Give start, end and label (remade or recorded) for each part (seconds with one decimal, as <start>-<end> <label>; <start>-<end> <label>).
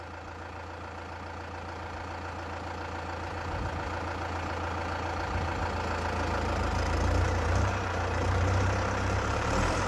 0.0-6.7 recorded; 6.7-9.9 remade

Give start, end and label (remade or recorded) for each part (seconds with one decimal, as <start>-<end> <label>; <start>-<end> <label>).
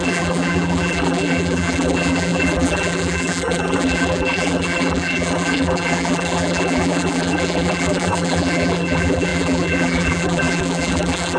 0.0-11.4 remade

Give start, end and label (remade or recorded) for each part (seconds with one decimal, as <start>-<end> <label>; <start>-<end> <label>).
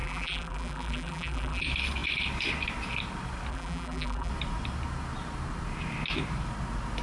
0.0-1.6 remade; 1.6-3.5 recorded; 3.5-4.3 remade; 4.3-7.0 recorded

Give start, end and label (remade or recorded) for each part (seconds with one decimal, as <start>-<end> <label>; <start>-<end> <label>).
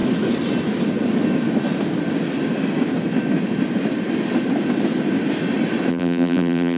0.0-5.9 recorded; 5.9-6.8 remade